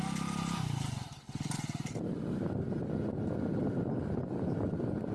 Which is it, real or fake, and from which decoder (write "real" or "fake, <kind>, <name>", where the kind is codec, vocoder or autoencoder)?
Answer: real